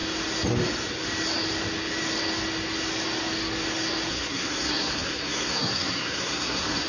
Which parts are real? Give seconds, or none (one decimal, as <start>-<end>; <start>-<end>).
0.0-4.1